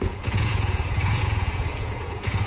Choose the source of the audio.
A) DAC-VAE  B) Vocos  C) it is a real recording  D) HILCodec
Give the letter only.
B